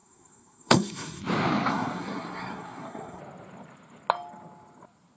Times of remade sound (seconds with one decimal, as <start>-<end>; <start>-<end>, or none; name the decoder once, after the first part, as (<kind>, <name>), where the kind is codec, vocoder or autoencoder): 0.0-1.2 (codec, SNAC); 1.7-3.2